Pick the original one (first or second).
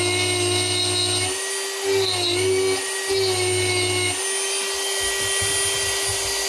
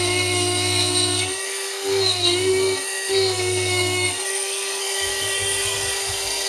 first